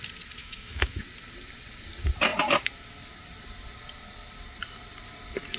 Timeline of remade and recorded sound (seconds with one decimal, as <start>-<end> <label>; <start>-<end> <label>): 0.0-0.4 recorded; 0.4-1.0 remade; 1.0-5.6 recorded